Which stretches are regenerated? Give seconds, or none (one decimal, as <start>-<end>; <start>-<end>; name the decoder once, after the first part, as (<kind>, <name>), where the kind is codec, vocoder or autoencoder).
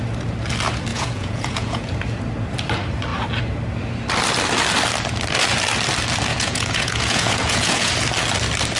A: 0.9-1.8 (vocoder, Vocos); 6.3-7.9